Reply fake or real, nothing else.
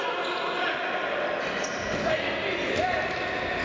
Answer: real